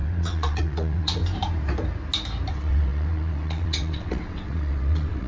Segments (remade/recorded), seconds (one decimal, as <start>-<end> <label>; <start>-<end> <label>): 0.0-1.2 remade; 1.2-2.5 recorded; 2.5-5.3 remade